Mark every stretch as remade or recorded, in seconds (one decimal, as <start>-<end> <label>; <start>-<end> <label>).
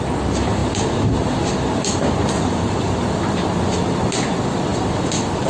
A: 0.0-5.5 recorded